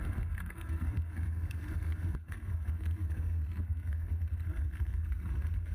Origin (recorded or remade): remade